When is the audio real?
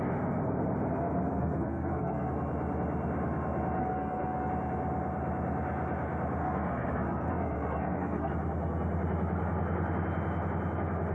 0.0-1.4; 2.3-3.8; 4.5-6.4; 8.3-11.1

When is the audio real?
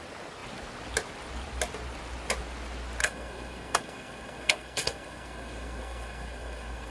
0.0-3.0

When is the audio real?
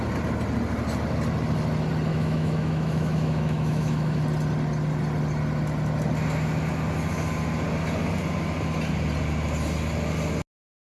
0.0-2.1; 4.2-11.0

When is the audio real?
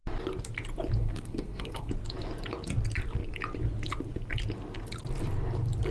0.0-1.0; 1.9-5.9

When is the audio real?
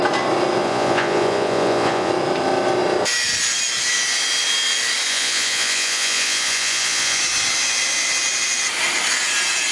0.0-0.6; 2.1-5.1; 7.2-9.7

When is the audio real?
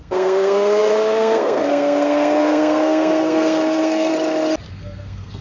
4.1-4.7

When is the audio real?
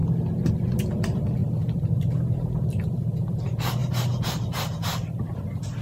0.0-0.5